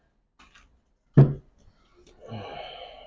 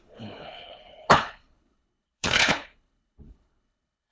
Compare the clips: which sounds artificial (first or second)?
second